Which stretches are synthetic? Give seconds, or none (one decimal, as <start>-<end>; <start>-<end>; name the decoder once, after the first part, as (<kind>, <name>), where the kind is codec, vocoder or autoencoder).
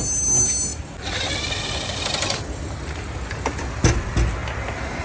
0.7-2.6 (vocoder, BigVGAN v2)